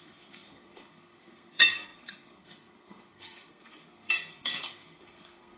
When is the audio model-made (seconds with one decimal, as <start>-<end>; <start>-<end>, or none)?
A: 0.0-5.6